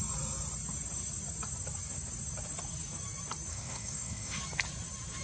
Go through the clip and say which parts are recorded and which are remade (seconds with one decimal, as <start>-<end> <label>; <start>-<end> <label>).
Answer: 0.0-3.5 recorded; 3.5-4.4 remade; 4.4-5.2 recorded